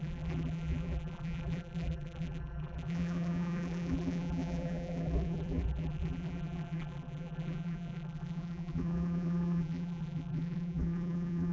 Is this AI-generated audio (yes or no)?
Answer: yes